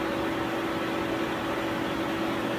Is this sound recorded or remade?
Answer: recorded